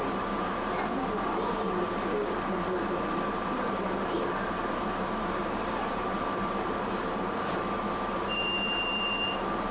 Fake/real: fake